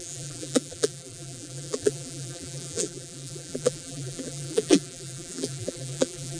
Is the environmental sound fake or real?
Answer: fake